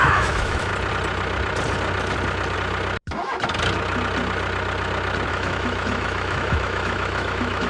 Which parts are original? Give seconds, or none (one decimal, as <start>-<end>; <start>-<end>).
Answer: 0.7-5.3

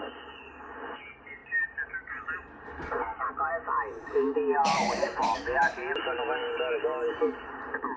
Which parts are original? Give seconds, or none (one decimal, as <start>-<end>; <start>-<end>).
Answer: 0.0-4.0; 6.0-8.0

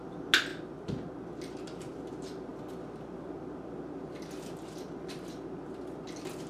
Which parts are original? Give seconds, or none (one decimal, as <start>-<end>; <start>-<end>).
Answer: 0.0-6.5

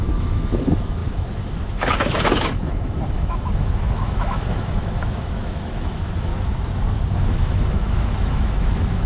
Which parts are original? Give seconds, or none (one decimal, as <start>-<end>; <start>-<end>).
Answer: 6.3-7.2

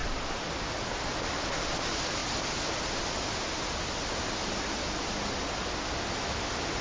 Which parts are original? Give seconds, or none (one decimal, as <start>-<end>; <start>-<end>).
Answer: 0.0-6.8

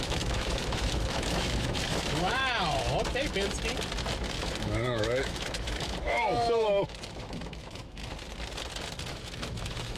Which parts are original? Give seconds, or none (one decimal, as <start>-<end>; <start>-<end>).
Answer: 2.4-4.4; 8.0-9.1